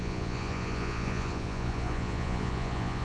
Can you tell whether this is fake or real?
fake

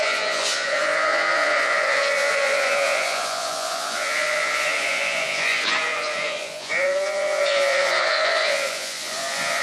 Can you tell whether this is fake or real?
fake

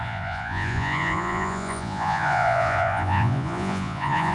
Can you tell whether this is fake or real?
fake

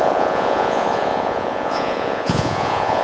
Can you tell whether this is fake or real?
fake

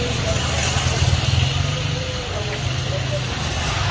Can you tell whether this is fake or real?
real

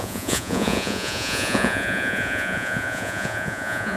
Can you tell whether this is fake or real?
fake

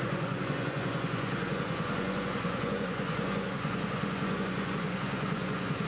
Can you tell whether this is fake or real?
fake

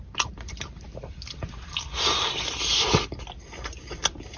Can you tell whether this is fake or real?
real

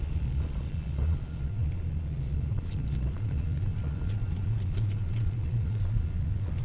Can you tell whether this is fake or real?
fake